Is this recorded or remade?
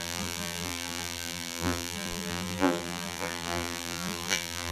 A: remade